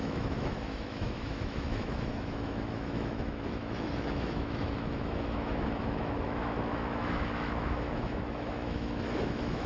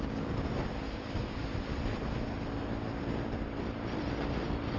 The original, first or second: second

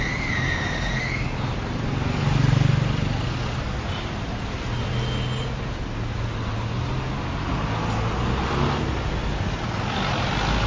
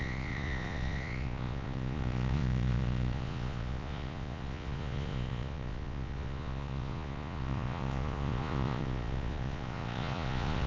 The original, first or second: first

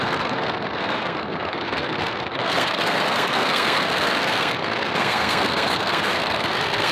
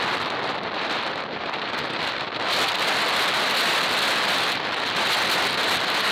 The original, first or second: second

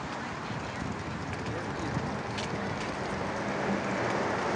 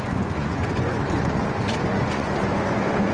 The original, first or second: first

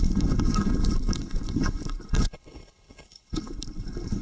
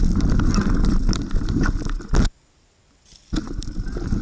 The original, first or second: second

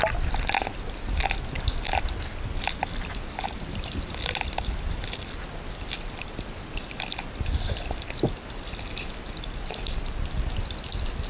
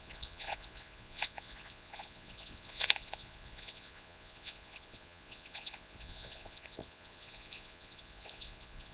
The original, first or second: first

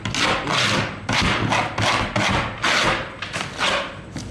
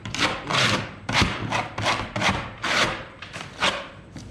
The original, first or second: first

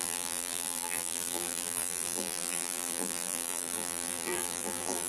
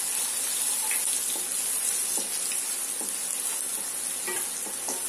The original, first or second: second